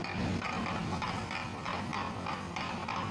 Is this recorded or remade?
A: recorded